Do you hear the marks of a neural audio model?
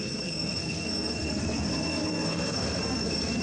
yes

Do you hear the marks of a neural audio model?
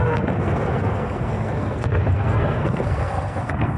yes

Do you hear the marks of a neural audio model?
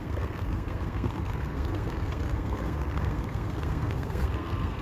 yes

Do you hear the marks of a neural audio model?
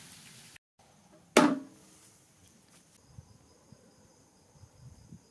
no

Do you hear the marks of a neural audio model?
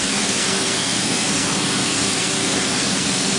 yes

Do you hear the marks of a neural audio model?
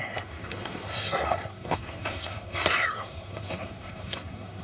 yes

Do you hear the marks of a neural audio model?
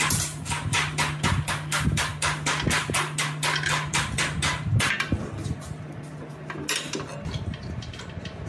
no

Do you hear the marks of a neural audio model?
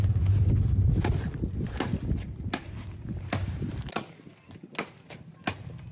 no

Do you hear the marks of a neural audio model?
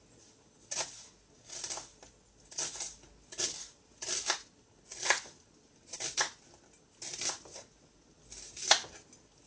no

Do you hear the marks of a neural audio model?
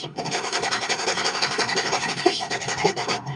yes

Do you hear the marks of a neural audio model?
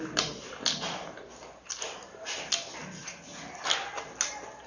no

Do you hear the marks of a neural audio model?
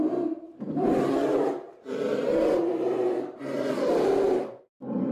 no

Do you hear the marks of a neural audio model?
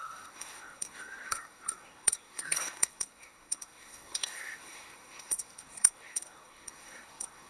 yes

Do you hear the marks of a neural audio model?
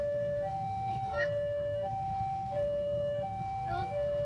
yes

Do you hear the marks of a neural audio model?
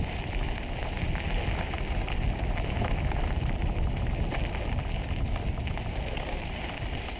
no